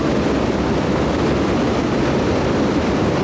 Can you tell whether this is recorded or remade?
recorded